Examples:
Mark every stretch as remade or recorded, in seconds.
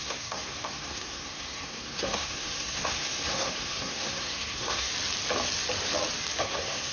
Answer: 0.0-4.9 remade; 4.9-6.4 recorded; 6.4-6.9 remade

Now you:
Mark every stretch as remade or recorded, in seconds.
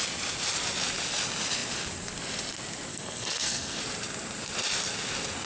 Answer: 0.0-2.9 recorded; 2.9-3.8 remade; 3.8-5.5 recorded